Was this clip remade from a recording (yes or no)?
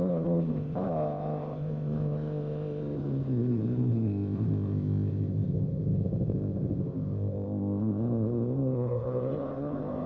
yes